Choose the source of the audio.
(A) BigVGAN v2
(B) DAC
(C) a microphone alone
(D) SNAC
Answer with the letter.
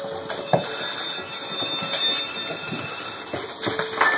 C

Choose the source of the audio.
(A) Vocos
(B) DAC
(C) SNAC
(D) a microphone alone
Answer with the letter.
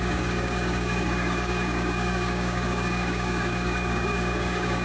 B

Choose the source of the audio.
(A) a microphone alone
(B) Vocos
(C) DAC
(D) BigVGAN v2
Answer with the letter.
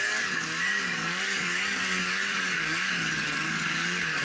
C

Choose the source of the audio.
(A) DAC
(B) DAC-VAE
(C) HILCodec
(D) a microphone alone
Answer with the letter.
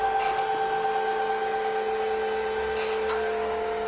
D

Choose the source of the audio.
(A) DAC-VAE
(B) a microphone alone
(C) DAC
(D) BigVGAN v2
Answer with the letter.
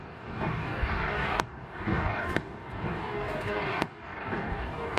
C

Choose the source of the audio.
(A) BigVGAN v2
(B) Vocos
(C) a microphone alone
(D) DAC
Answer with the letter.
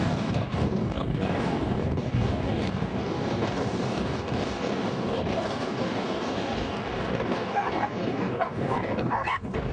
D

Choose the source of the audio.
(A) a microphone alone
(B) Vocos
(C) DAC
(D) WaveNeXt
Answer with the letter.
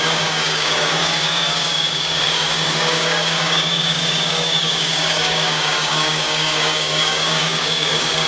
C